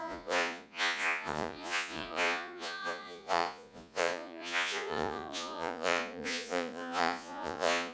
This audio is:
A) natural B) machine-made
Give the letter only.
B